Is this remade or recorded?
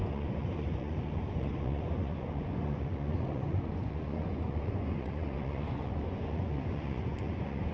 remade